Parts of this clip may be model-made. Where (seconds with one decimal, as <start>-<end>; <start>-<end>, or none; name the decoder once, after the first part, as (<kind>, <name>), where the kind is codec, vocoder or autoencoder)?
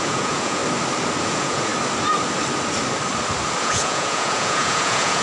0.0-0.6 (vocoder, Vocos); 1.2-1.7; 3.6-5.2